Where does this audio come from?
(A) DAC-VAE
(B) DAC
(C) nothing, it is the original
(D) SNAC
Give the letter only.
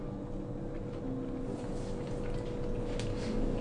C